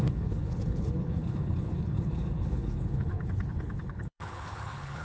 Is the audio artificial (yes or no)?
yes